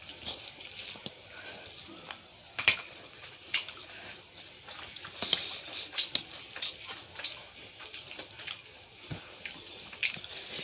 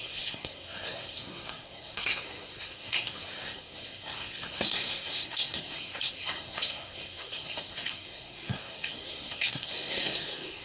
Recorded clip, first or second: first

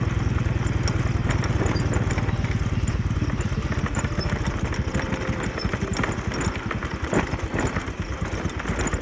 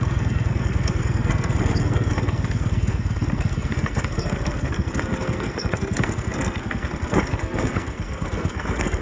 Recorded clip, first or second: first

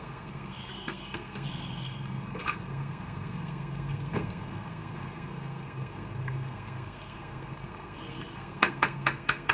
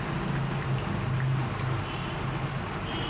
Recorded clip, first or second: second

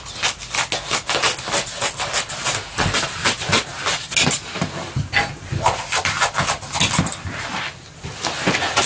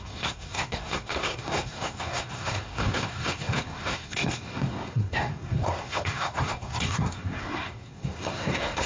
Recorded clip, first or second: first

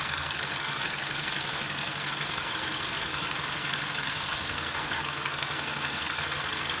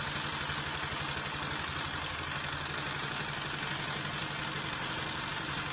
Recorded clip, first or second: second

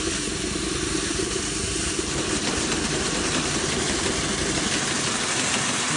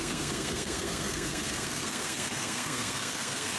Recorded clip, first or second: first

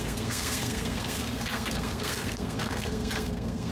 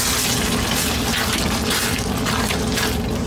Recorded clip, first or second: second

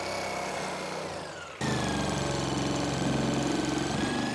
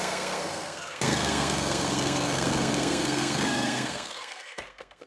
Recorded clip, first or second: first